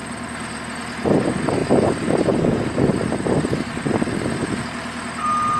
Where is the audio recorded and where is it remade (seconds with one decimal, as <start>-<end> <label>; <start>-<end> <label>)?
0.0-0.6 remade; 0.6-1.6 recorded; 1.6-4.6 remade; 4.6-5.6 recorded